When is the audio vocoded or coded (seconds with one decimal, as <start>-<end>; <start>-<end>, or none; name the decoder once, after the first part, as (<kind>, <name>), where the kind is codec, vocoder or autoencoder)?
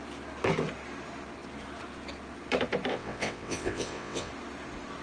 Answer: 2.9-4.3 (vocoder, WaveNeXt)